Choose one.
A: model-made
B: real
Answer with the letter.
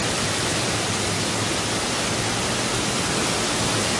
B